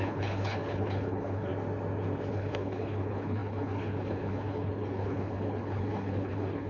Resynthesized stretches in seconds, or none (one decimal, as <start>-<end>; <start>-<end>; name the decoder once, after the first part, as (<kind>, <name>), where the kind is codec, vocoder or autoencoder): 0.0-1.5 (codec, HILCodec); 2.3-6.7